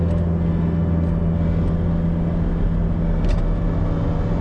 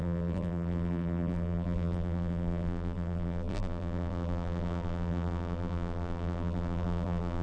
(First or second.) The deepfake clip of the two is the second